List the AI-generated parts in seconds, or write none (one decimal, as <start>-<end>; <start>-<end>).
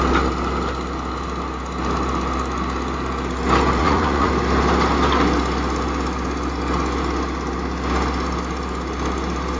3.8-4.3